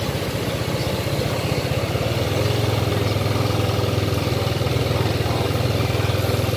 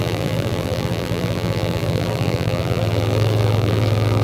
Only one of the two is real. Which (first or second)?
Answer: first